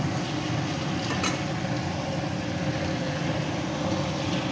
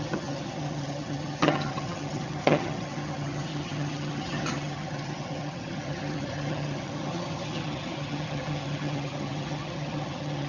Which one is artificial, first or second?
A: second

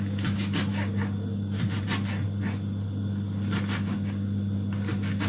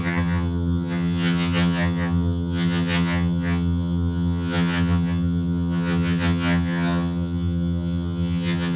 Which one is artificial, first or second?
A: second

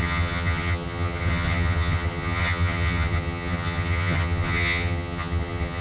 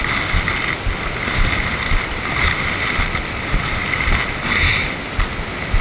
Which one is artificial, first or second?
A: first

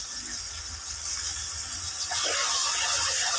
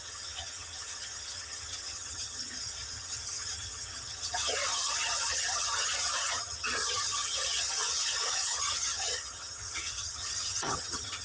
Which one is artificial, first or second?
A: second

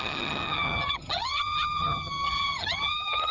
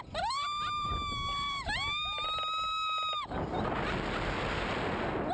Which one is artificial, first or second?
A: first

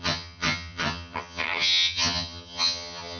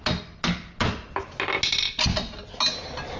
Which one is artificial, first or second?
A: first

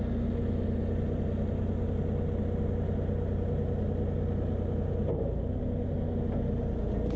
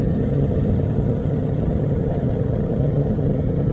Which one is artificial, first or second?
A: second